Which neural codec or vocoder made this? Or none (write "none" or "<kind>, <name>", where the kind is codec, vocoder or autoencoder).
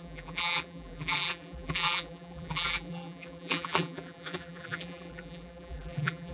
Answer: vocoder, BigVGAN v2